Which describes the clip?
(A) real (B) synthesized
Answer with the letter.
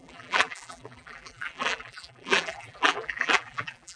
B